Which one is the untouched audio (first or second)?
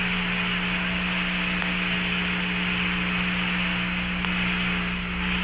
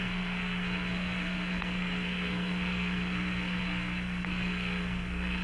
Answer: first